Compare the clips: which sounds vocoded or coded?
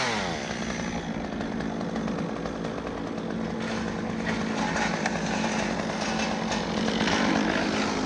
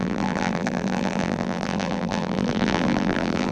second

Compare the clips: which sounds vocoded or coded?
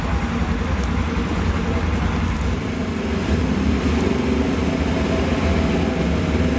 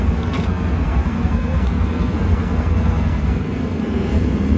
second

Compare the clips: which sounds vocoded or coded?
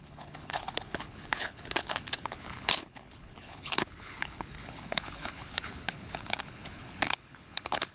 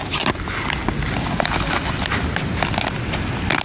first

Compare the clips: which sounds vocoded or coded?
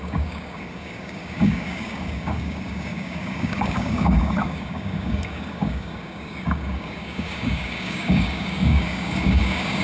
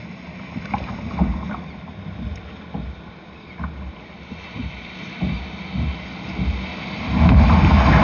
first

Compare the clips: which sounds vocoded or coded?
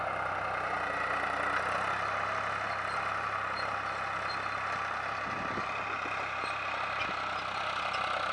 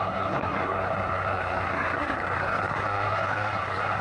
second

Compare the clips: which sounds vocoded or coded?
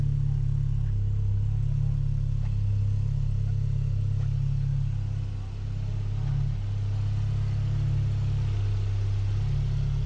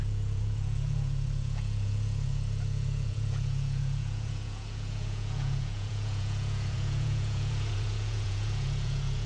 second